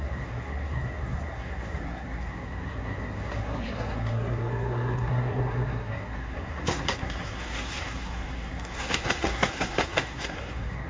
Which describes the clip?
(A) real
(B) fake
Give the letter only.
B